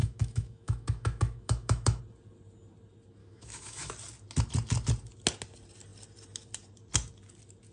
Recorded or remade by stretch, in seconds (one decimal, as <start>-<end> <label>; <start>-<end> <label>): 0.0-2.0 remade; 2.0-3.2 recorded; 3.2-3.9 remade; 3.9-7.7 recorded